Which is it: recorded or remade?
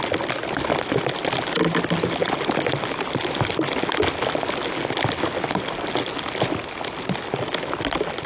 recorded